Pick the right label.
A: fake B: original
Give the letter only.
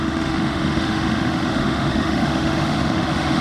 A